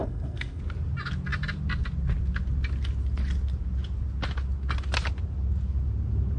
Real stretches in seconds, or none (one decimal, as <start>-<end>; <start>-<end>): 0.6-6.4